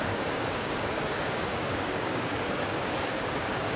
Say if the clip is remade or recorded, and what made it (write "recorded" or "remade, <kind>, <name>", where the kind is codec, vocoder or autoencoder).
remade, codec, DAC